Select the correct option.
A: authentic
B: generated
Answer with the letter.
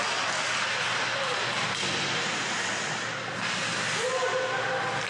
A